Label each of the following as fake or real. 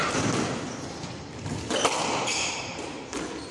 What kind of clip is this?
real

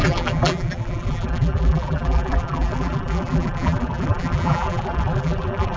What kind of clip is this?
fake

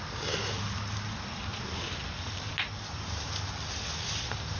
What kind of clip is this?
real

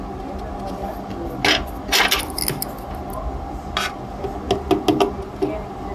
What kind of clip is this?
real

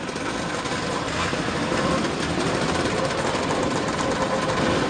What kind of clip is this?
fake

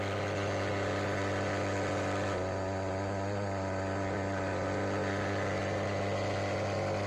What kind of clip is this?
real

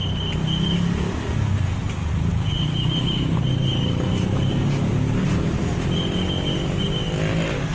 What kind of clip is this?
real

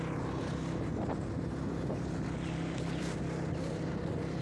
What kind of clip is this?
fake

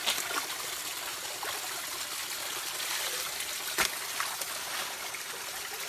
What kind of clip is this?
real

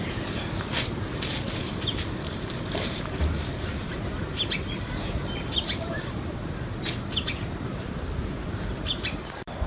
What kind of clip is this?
fake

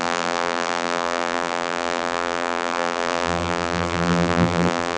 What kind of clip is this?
fake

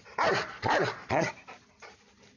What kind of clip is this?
fake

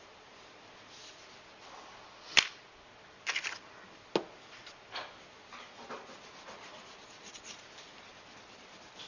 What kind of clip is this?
real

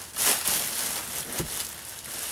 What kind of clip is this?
real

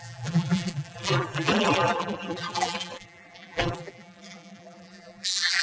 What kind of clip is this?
fake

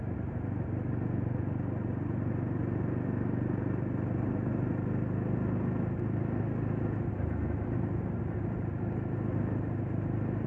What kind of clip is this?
real